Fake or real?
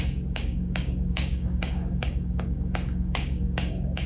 fake